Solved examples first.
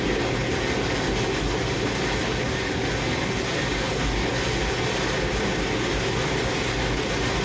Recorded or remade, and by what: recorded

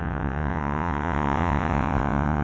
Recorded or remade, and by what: remade, vocoder, WaveNeXt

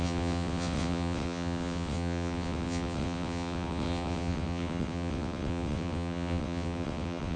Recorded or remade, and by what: remade, vocoder, WaveNeXt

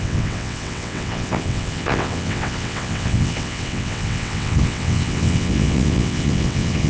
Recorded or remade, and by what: remade, vocoder, WaveNeXt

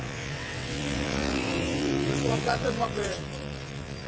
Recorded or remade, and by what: remade, vocoder, WaveNeXt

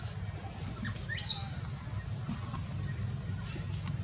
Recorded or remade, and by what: recorded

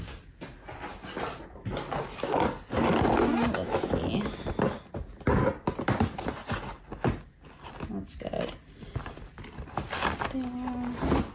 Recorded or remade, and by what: recorded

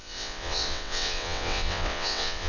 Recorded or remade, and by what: remade, vocoder, WaveNeXt